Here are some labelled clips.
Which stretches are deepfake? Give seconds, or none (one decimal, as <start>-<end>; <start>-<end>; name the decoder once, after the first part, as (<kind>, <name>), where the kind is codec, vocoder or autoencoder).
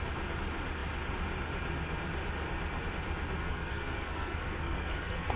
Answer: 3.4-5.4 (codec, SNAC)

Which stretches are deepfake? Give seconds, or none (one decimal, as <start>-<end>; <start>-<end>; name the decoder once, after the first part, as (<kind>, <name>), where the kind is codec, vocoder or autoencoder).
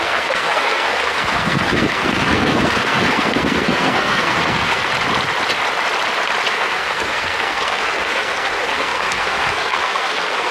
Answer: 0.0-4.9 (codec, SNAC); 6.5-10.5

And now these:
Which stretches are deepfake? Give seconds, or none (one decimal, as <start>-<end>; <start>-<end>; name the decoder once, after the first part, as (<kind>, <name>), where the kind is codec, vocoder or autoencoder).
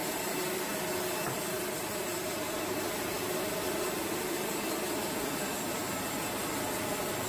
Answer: 0.0-0.6 (vocoder, BigVGAN v2); 2.1-2.8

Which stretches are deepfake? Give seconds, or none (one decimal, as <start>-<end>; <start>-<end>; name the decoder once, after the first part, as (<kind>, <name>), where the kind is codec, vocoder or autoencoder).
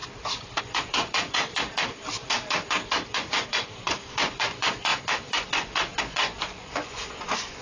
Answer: 0.6-1.7 (vocoder, Vocos); 3.1-7.6